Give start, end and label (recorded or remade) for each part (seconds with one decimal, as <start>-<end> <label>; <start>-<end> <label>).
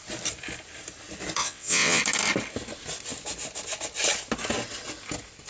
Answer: 0.0-1.4 recorded; 1.4-2.0 remade; 2.0-5.5 recorded